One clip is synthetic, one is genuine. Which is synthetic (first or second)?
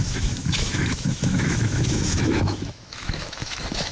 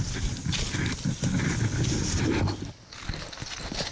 first